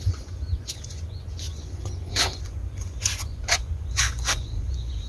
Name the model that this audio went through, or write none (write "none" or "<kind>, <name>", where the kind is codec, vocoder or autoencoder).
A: vocoder, Vocos